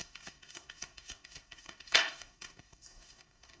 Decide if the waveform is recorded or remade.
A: remade